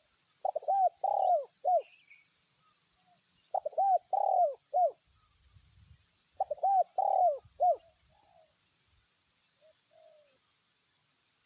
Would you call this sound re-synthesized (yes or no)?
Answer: no